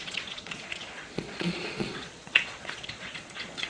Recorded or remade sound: remade